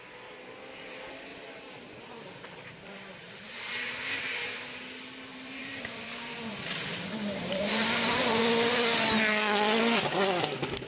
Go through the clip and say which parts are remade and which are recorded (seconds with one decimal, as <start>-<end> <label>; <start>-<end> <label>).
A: 0.0-1.3 recorded; 1.3-4.5 remade; 4.5-5.3 recorded; 5.3-8.4 remade; 8.4-10.9 recorded